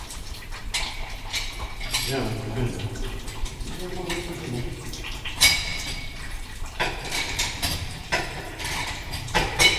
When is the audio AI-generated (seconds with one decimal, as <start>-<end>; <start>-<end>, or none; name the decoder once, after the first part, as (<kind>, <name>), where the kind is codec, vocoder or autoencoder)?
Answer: 0.0-0.6 (vocoder, BigVGAN v2); 3.4-9.8